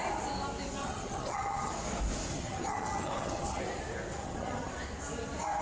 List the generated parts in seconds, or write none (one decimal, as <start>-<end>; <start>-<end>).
0.8-1.7; 2.3-3.6; 4.2-4.7